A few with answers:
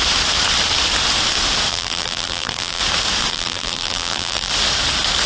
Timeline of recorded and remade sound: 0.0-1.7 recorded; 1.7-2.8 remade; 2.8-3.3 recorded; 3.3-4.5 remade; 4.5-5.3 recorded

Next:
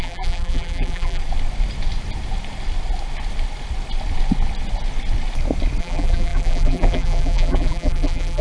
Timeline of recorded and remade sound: 0.0-1.2 remade; 1.2-5.8 recorded; 5.8-8.4 remade